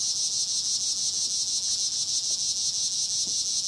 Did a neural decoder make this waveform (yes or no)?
no